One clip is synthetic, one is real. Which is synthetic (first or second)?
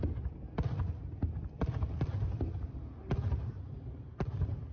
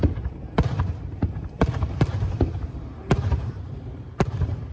second